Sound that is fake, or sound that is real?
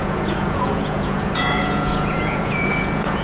fake